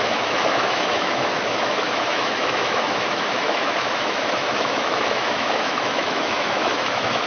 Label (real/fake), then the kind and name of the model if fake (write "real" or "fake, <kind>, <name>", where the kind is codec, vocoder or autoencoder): fake, autoencoder, DAC-VAE